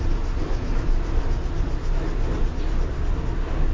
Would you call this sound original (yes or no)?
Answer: yes